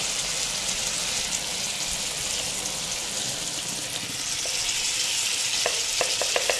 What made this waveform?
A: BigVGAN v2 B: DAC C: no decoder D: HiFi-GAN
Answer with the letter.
C